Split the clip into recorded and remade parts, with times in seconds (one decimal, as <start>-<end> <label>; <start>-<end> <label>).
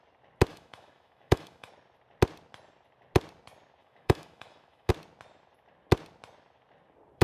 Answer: 0.0-0.5 recorded; 0.5-1.7 remade; 1.7-3.8 recorded; 3.8-4.9 remade; 4.9-7.2 recorded